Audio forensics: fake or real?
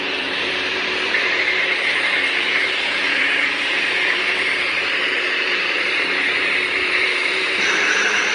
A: fake